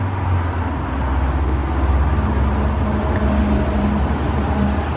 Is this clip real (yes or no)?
yes